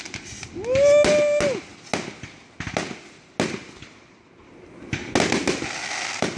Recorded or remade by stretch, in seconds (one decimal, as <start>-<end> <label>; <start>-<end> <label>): 0.0-6.4 recorded